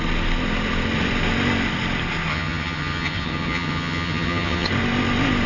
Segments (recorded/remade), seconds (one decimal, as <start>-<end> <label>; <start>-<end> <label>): 0.0-2.3 recorded; 2.3-4.7 remade; 4.7-5.5 recorded